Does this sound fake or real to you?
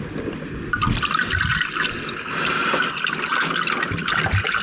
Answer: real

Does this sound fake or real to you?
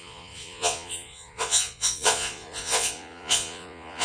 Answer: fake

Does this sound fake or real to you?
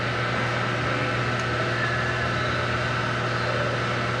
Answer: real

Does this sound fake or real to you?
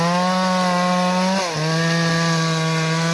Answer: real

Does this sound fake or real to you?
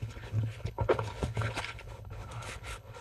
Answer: fake